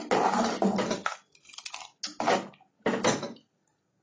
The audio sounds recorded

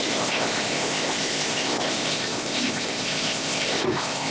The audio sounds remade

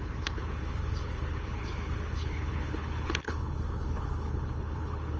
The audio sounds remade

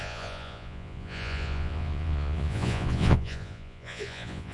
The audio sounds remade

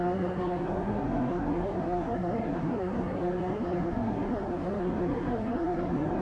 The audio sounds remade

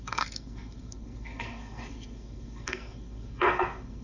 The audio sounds remade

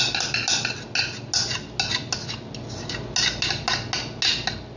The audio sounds recorded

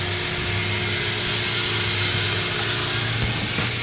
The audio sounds recorded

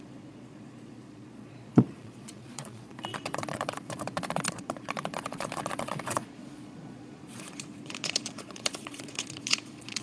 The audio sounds remade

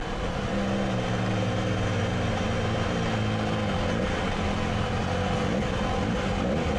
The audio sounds recorded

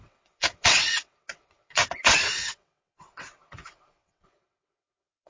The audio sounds remade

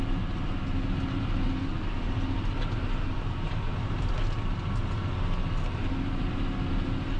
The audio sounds recorded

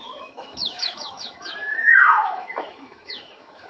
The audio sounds remade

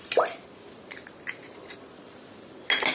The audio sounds recorded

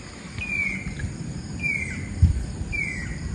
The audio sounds recorded